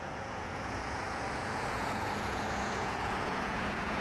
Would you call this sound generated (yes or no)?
yes